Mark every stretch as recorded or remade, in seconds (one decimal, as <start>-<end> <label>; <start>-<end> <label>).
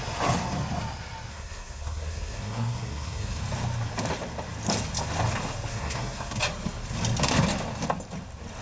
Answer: 0.0-1.3 recorded; 1.3-3.4 remade; 3.4-5.7 recorded; 5.7-6.4 remade; 6.4-8.6 recorded